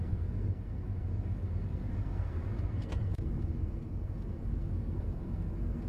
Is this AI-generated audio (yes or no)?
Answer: yes